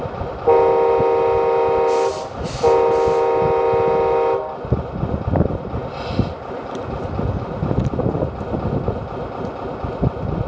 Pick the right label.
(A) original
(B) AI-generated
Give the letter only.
A